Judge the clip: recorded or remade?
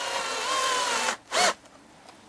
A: recorded